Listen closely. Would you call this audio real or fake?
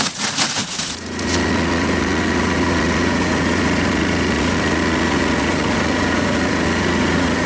fake